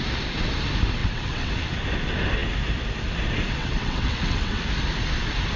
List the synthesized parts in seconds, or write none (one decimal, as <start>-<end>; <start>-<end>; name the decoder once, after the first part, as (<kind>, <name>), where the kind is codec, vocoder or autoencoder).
1.0-1.5 (vocoder, WaveNeXt); 3.6-4.6